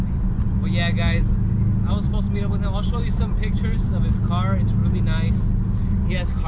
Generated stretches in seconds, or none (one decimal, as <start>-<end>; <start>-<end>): none